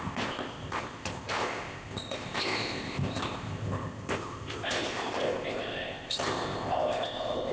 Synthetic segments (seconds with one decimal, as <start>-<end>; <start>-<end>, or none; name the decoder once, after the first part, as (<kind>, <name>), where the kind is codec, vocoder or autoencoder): 0.0-7.5 (codec, ZipCodec)